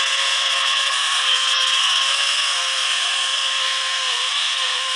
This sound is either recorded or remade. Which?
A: remade